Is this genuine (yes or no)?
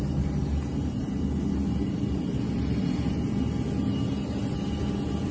yes